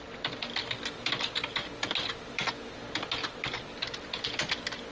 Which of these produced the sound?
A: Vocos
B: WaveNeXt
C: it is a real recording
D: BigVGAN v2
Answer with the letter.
C